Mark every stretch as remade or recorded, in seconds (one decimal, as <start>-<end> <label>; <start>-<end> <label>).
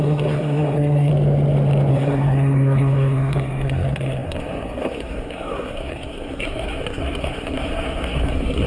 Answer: 0.0-1.1 remade; 1.1-1.9 recorded; 1.9-8.7 remade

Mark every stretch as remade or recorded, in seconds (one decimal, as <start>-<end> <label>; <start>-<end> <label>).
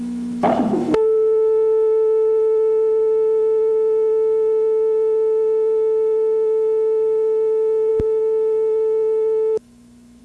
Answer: 0.0-10.2 remade